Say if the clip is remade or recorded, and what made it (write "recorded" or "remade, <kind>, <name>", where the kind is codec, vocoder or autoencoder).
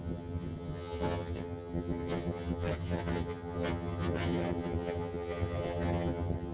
remade, vocoder, HiFi-GAN